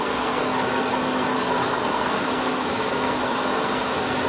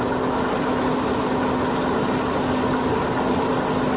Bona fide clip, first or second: second